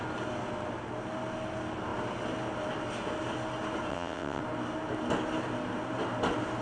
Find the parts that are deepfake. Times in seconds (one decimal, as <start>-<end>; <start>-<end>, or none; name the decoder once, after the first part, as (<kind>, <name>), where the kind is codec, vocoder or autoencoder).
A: 3.9-4.4 (vocoder, WaveNeXt)